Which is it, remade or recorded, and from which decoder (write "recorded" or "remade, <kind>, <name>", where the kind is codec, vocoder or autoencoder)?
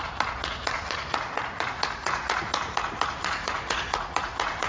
remade, vocoder, Vocos